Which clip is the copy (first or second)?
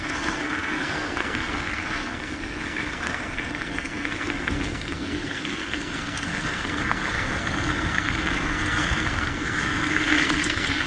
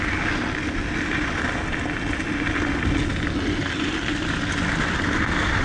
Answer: first